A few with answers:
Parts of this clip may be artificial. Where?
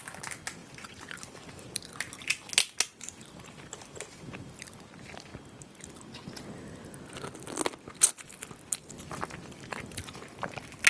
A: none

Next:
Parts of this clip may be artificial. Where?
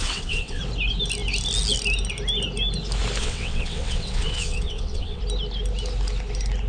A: 0.0-0.6 (vocoder, WaveNeXt); 3.2-5.2